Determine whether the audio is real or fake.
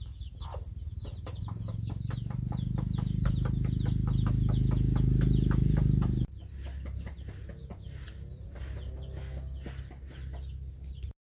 real